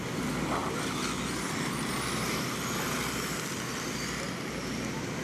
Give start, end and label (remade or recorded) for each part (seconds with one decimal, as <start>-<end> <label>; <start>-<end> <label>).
0.0-5.2 recorded